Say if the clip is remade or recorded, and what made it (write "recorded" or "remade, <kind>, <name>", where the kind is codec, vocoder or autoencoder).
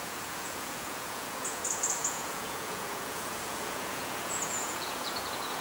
remade, vocoder, Vocos